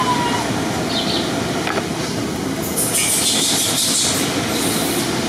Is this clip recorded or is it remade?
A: recorded